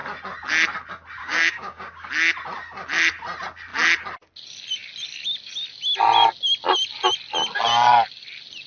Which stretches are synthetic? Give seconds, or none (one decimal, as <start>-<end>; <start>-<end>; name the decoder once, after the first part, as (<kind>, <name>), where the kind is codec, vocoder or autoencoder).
1.2-2.1 (codec, DAC)